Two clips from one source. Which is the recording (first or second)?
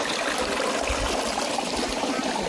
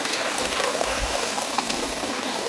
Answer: first